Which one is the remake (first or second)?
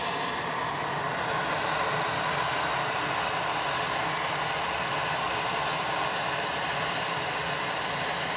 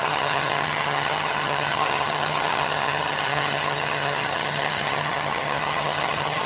second